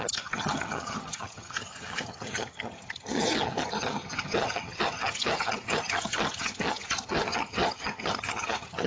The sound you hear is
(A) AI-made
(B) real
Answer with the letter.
A